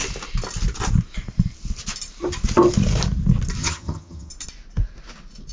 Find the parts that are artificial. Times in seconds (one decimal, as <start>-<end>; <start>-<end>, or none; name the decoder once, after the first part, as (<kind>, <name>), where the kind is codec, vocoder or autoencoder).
3.6-4.3 (vocoder, HiFi-GAN)